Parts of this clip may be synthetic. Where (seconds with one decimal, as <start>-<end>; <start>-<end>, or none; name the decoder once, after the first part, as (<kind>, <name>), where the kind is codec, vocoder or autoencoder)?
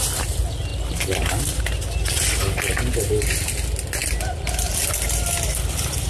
none